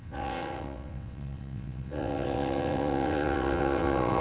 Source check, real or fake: fake